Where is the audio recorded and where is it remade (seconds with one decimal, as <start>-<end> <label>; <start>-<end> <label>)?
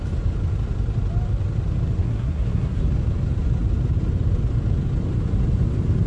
0.0-2.0 recorded; 2.0-2.8 remade; 2.8-6.1 recorded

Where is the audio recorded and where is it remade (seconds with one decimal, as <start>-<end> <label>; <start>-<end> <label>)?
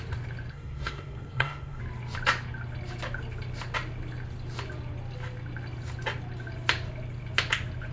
0.0-0.5 recorded; 0.5-1.8 remade; 1.8-7.9 recorded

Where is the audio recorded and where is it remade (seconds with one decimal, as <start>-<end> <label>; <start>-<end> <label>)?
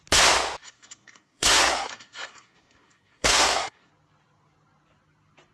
0.0-0.6 recorded; 0.6-3.9 remade; 3.9-5.5 recorded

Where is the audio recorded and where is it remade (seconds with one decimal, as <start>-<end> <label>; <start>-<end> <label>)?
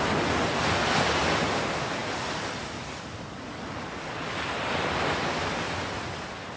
0.0-6.6 recorded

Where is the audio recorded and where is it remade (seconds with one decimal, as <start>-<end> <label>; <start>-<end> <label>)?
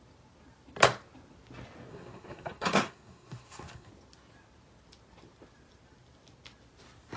0.0-1.9 recorded; 1.9-3.9 remade; 3.9-7.2 recorded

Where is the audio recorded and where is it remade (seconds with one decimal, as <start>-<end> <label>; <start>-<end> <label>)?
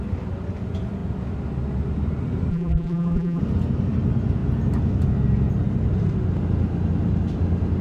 0.0-2.5 recorded; 2.5-3.4 remade; 3.4-7.8 recorded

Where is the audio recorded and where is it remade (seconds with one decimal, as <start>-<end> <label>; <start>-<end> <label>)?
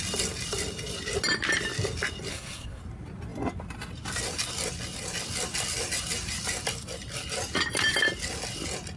0.0-2.3 recorded; 2.3-2.8 remade; 2.8-9.0 recorded